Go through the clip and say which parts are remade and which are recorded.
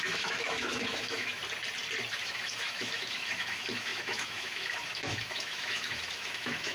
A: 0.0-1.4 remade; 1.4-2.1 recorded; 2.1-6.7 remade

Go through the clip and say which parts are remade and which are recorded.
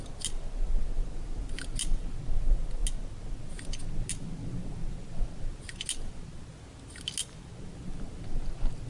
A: 0.0-8.9 recorded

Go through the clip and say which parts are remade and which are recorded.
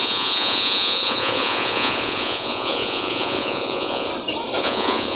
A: 0.0-4.1 remade; 4.1-4.6 recorded; 4.6-5.2 remade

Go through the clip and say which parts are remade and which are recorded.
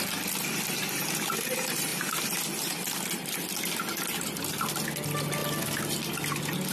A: 0.0-6.7 recorded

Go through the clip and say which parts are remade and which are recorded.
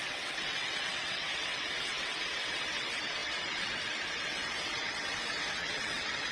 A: 0.0-6.3 remade